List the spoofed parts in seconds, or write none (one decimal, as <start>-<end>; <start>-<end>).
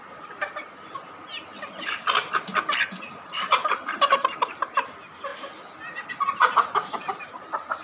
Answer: 0.0-2.5; 3.1-5.3; 6.1-7.8